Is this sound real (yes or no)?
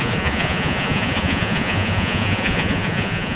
no